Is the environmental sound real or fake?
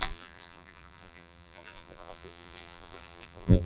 fake